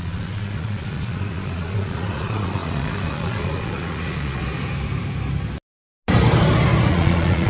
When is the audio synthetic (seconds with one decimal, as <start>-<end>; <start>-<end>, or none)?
0.0-4.4; 6.9-7.5